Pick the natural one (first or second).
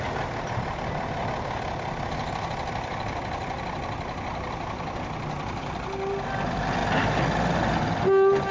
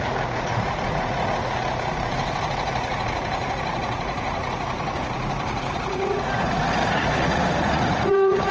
first